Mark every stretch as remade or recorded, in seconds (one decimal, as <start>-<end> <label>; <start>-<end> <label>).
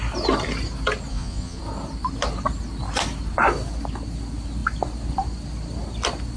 0.0-1.1 recorded; 1.1-1.6 remade; 1.6-6.4 recorded